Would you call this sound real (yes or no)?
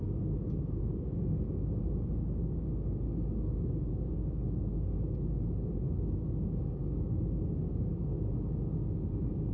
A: no